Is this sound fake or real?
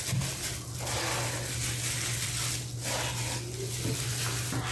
real